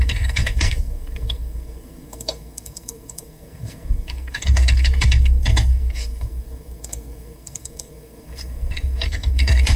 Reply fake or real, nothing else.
fake